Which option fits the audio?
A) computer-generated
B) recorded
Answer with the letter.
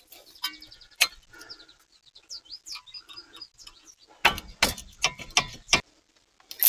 B